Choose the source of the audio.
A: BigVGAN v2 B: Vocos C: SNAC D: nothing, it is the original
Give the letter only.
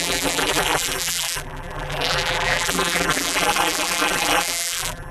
A